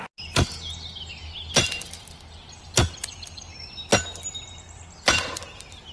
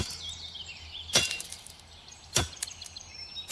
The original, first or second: first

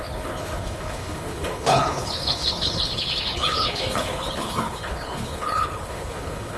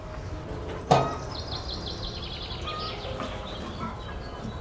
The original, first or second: second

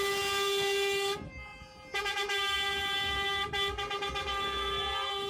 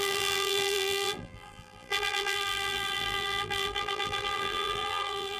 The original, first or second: first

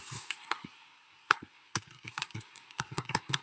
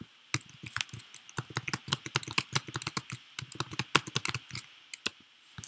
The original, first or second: second